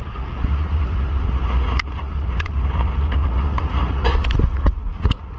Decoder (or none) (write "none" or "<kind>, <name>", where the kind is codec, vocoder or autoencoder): vocoder, Vocos